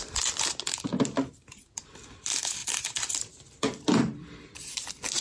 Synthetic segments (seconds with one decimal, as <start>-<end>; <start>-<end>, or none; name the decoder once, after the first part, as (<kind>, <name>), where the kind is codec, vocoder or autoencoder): 2.6-4.7 (vocoder, BigVGAN v2)

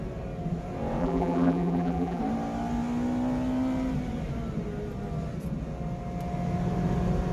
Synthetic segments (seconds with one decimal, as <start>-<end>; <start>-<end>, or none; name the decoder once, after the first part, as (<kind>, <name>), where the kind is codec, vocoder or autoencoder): 1.0-2.2 (vocoder, BigVGAN v2)

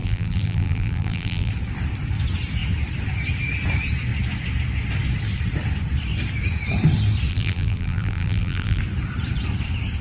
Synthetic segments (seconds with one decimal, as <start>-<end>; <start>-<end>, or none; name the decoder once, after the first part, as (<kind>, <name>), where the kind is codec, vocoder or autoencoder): 0.0-1.5 (vocoder, BigVGAN v2); 7.3-8.8

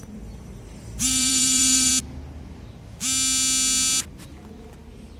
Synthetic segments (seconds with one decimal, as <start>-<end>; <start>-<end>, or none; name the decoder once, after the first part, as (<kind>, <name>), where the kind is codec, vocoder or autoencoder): 0.0-1.9 (vocoder, BigVGAN v2)

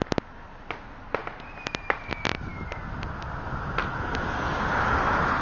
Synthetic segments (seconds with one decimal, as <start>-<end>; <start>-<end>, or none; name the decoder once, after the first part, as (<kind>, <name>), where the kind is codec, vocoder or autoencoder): none